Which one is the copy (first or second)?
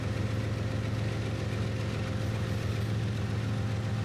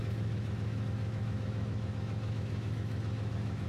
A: second